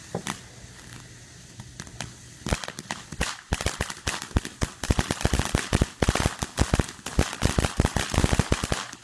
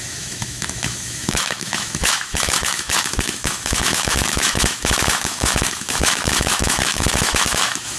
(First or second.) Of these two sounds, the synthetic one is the second